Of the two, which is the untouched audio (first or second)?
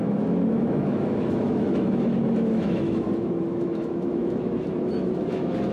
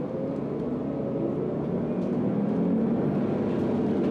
second